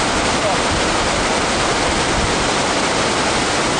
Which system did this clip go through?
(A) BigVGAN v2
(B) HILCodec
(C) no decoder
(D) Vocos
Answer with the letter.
C